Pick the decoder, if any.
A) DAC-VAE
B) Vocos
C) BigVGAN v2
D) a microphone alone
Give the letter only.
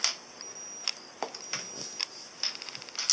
D